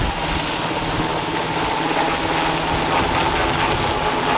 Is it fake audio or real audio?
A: real